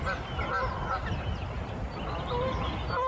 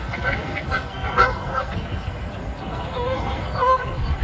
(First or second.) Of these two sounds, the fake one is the second